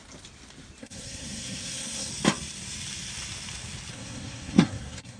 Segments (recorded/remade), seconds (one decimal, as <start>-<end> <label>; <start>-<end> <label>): 0.0-0.8 recorded; 0.8-2.1 remade; 2.1-3.9 recorded; 3.9-5.2 remade